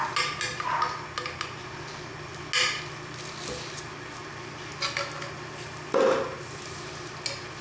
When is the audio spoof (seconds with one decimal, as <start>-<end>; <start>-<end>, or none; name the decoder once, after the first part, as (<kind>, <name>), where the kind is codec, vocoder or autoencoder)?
none